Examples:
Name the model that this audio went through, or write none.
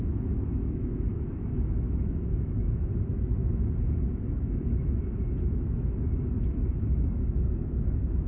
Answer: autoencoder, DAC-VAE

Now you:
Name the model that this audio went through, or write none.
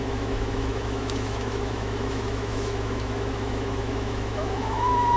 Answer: autoencoder, DAC-VAE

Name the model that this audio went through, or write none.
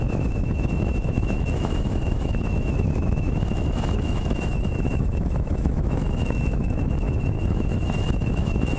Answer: autoencoder, DAC-VAE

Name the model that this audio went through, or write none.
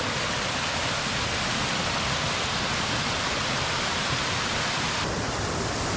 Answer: none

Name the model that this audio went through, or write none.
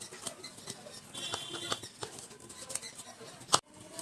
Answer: none